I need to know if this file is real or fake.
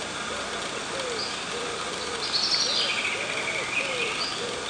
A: real